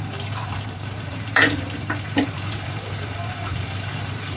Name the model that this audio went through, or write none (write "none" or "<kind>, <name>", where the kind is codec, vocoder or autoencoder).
vocoder, BigVGAN v2